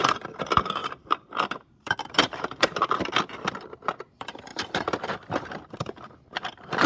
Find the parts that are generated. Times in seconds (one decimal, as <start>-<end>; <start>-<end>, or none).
0.8-3.2; 4.5-5.7